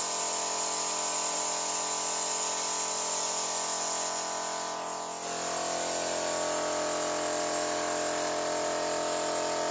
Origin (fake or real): real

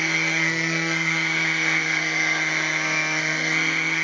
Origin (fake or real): fake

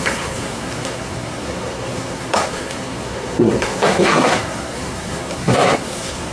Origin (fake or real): fake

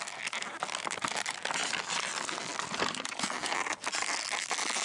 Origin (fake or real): real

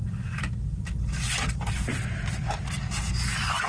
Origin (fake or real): real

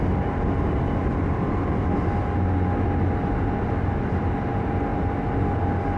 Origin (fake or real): real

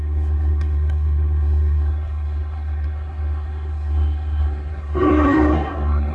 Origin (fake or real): fake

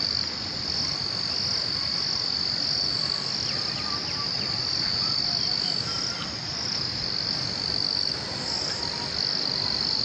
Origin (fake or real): real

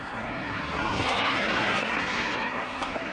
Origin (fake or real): fake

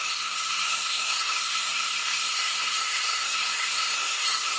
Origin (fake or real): fake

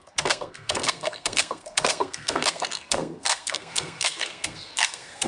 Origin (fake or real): fake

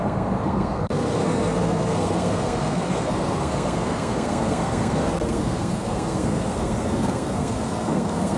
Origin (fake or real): fake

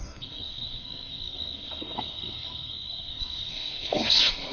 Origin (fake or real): fake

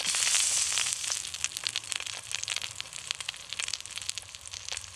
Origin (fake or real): real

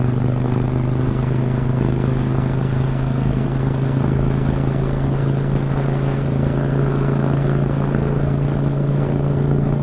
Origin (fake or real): fake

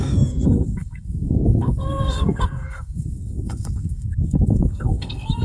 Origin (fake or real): fake